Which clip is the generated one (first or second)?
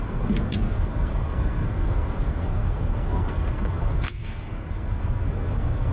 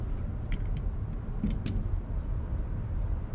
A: first